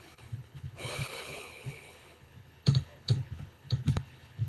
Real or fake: fake